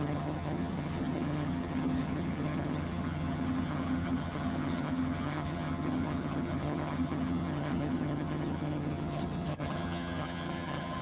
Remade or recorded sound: remade